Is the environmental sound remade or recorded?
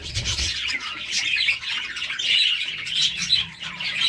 remade